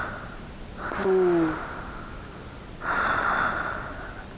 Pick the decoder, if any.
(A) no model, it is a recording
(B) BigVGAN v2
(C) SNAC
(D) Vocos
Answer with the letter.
A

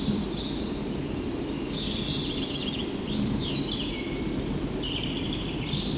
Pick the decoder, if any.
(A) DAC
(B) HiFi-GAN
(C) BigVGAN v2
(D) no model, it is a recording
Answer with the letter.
D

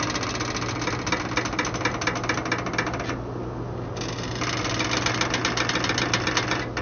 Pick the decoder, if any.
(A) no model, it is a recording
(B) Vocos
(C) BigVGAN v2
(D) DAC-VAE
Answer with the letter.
A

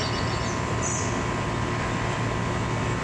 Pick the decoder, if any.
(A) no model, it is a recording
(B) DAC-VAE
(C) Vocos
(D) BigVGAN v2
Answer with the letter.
A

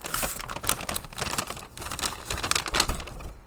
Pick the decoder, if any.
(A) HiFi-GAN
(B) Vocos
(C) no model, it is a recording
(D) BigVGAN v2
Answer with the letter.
C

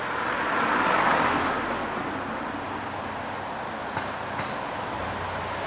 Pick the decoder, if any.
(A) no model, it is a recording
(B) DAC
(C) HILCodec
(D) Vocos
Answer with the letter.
A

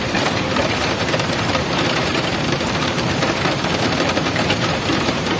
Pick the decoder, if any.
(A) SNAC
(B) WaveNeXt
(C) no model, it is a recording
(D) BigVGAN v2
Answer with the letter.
D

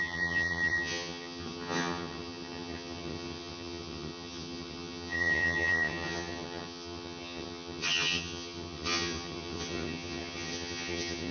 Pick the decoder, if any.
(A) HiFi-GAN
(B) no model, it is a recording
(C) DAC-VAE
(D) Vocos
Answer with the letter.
A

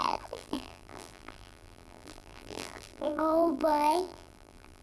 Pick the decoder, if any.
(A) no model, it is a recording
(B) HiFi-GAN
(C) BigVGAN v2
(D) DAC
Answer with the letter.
C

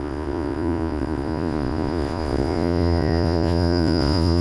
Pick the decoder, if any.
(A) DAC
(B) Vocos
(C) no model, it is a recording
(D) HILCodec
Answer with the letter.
B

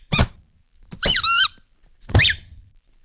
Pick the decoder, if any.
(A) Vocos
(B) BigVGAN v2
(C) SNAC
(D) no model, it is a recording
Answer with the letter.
B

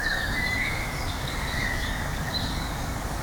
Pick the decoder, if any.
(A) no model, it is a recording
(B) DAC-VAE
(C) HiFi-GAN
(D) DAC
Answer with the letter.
D